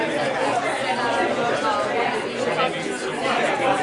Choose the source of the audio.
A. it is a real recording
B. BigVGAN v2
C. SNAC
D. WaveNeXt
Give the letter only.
A